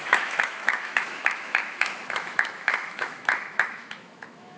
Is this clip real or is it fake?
fake